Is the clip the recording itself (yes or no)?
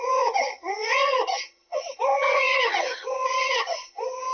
no